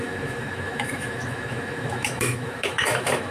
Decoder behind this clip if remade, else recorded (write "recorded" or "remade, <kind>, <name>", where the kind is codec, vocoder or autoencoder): remade, autoencoder, DAC-VAE